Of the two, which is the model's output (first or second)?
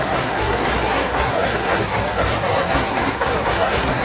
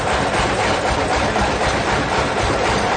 first